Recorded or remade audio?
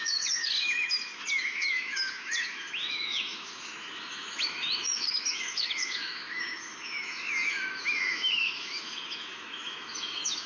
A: remade